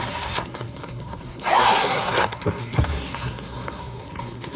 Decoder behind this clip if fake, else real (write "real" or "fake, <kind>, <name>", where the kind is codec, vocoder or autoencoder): fake, codec, SNAC